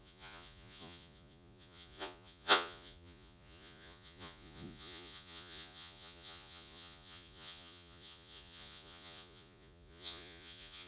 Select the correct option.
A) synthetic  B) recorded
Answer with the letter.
A